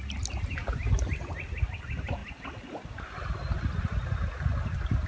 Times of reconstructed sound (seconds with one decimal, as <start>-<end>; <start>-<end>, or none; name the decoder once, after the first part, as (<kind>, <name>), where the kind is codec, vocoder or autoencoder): none